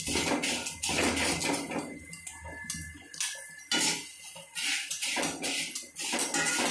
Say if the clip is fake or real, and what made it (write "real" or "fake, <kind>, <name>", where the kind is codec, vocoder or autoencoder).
real